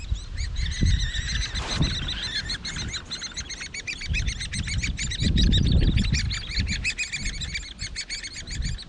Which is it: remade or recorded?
recorded